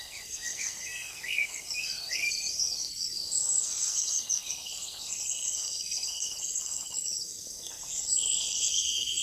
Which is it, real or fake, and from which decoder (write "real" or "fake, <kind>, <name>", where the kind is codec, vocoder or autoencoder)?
fake, codec, SNAC